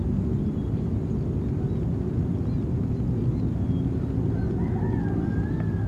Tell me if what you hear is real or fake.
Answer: real